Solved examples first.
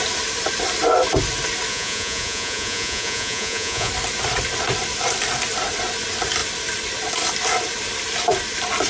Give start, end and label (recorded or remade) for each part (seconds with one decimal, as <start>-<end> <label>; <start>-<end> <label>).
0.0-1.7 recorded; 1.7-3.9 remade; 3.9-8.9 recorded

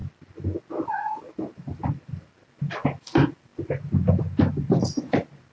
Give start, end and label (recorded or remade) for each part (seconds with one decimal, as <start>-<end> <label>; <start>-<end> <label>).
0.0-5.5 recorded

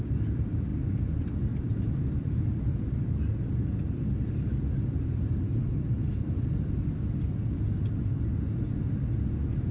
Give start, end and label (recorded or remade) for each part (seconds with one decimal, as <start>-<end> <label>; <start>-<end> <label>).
0.0-0.7 recorded; 0.7-4.4 remade; 4.4-6.0 recorded; 6.0-8.0 remade; 8.0-9.7 recorded

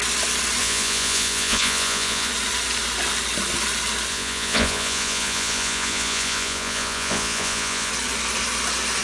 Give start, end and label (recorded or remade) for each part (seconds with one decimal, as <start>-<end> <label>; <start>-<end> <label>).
0.0-0.6 recorded; 0.6-2.3 remade; 2.3-4.1 recorded; 4.1-7.9 remade; 7.9-9.0 recorded